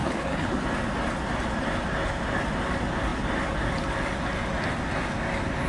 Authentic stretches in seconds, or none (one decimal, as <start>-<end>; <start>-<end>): 0.5-5.7